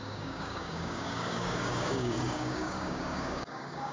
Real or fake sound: fake